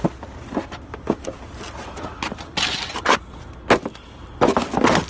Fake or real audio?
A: real